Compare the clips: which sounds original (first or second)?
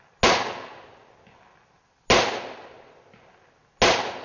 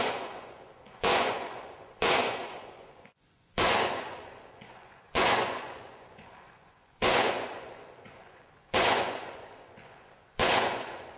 first